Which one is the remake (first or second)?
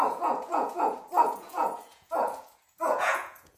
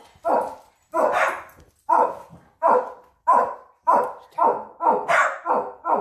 first